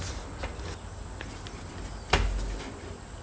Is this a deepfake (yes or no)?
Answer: no